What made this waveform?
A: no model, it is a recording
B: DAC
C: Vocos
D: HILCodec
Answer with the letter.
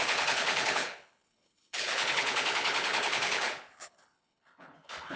D